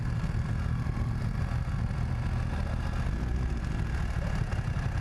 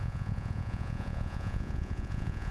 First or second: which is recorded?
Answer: first